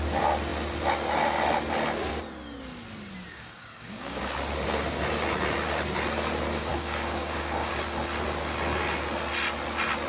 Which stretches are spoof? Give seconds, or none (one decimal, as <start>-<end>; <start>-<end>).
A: 3.3-4.2; 6.7-7.7